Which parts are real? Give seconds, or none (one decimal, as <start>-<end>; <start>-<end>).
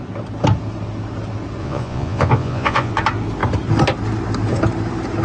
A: 0.0-1.6; 2.9-5.2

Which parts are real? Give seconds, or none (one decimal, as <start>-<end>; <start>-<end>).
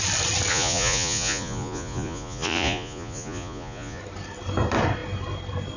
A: 0.0-0.5; 4.0-5.8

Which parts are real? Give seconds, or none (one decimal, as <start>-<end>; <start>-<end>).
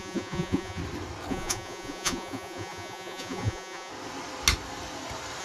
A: 0.8-1.3; 3.9-5.4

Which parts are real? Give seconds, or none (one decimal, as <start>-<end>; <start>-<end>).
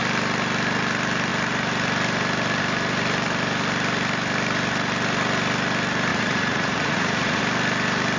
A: 0.0-6.1; 7.4-8.2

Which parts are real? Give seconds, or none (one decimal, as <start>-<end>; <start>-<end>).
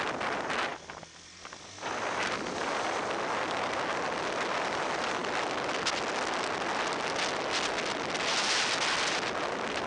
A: 0.0-9.9